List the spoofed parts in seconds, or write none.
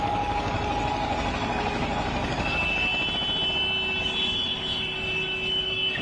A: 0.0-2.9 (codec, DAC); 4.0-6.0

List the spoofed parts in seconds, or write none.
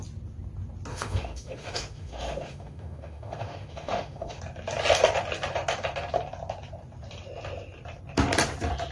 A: 0.9-4.4 (autoencoder, DAC-VAE)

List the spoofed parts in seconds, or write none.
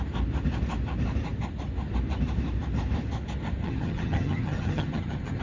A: 3.6-5.4 (vocoder, HiFi-GAN)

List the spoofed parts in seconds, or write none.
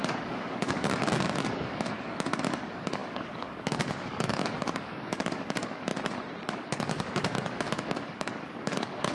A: 0.0-5.9 (codec, DAC); 6.5-9.1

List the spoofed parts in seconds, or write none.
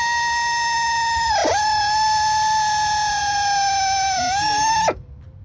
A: none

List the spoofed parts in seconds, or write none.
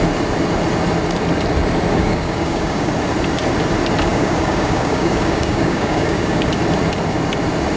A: 1.9-2.9 (codec, DAC); 4.1-6.5